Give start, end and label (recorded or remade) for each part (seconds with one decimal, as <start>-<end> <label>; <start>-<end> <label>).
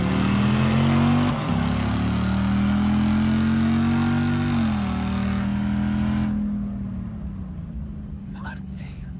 0.0-8.2 recorded; 8.2-9.2 remade